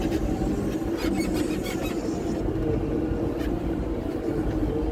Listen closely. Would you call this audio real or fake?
real